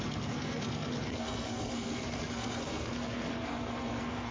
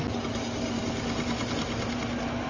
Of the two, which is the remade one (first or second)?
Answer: first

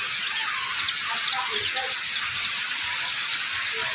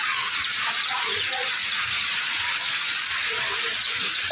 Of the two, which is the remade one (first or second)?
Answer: second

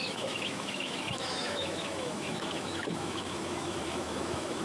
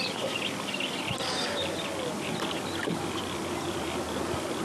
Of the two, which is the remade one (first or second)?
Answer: first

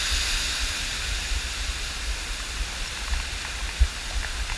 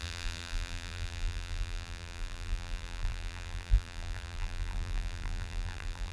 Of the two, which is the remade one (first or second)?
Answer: second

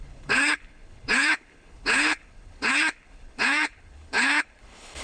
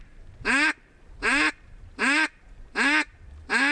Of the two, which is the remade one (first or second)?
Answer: first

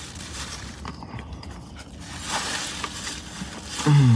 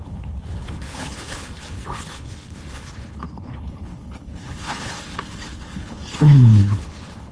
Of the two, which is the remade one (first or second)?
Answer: second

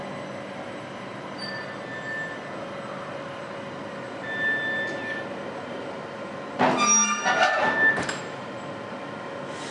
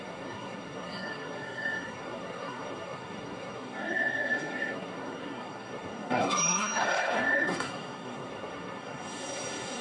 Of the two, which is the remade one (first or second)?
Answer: second